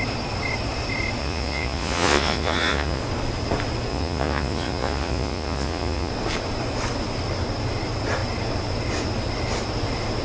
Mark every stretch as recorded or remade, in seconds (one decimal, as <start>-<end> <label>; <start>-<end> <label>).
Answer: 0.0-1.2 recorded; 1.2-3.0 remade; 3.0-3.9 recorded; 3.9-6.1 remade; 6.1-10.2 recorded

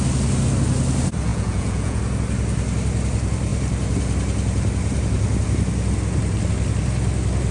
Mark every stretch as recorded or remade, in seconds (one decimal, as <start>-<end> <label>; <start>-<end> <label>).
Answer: 0.0-1.3 recorded; 1.3-2.0 remade; 2.0-7.5 recorded

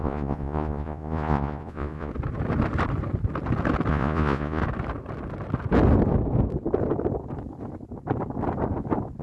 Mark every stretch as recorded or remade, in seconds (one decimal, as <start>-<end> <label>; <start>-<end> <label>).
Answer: 0.0-2.1 remade; 2.1-3.9 recorded; 3.9-4.6 remade; 4.6-9.2 recorded

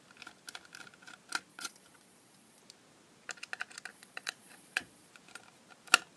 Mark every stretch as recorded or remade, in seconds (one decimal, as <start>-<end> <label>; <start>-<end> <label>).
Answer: 0.0-1.5 recorded; 1.5-2.6 remade; 2.6-3.9 recorded; 3.9-5.1 remade; 5.1-6.2 recorded

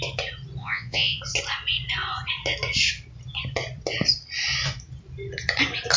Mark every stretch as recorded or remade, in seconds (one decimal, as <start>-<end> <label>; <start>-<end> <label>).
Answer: 0.0-0.6 recorded; 0.6-1.2 remade; 1.2-6.0 recorded

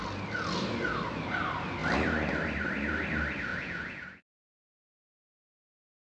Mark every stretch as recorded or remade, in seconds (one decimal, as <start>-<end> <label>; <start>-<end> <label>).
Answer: 0.0-3.5 recorded; 3.5-4.6 remade; 4.6-6.1 recorded

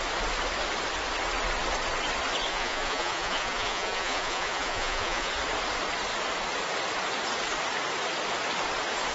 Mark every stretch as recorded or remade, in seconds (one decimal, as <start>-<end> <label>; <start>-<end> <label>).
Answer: 0.0-2.5 recorded; 2.5-5.3 remade; 5.3-9.1 recorded